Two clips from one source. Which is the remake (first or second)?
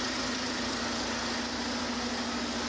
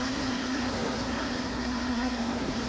second